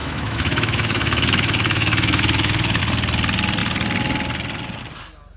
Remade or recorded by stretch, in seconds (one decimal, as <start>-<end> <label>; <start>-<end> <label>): 0.0-2.8 remade; 2.8-5.4 recorded